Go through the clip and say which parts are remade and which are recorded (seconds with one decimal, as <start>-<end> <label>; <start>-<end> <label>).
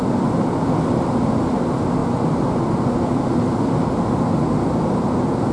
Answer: 0.0-5.5 recorded